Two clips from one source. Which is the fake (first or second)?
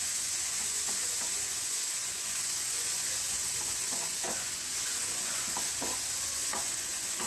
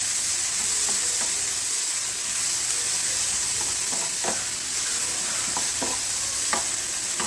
first